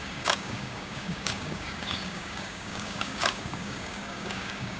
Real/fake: fake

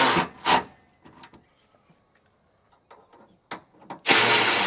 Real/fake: real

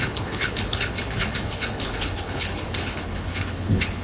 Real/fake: fake